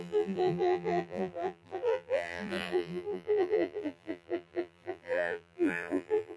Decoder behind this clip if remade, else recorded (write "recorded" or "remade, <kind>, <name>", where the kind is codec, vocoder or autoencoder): remade, vocoder, BigVGAN v2